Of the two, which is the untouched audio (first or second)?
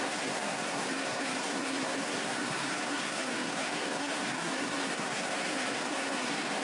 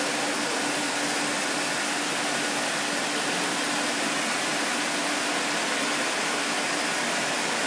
second